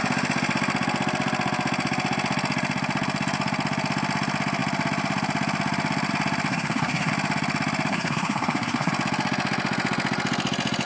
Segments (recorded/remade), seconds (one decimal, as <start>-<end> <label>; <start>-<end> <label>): 0.0-6.5 recorded; 6.5-7.1 remade; 7.1-7.9 recorded; 7.9-8.9 remade; 8.9-10.9 recorded

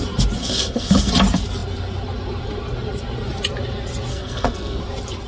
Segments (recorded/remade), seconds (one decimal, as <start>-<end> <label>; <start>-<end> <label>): 0.0-0.4 recorded; 0.4-1.1 remade; 1.1-4.1 recorded; 4.1-4.8 remade; 4.8-5.3 recorded

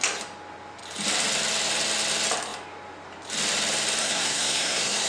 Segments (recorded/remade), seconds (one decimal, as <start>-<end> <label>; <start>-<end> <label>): 0.0-4.0 recorded; 4.0-5.1 remade